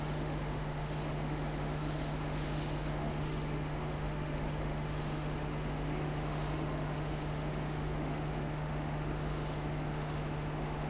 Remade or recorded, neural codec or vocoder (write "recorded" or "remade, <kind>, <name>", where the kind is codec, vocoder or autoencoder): remade, autoencoder, DAC-VAE